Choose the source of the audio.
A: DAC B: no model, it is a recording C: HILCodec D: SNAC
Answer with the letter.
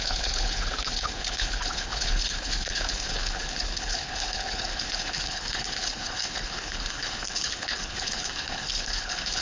C